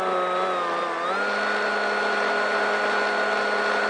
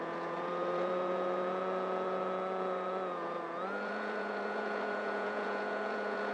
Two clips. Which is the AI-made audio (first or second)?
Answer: second